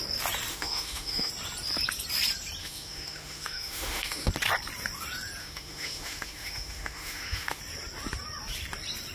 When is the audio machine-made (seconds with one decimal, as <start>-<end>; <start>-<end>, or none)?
0.5-1.3; 2.6-4.3; 5.4-7.6